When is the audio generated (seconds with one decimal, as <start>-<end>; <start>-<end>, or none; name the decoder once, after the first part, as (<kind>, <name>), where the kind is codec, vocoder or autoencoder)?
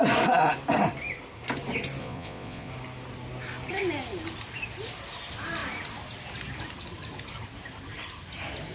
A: 2.0-2.7 (vocoder, Vocos)